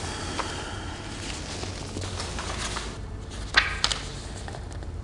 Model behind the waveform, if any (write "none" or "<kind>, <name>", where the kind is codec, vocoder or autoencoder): none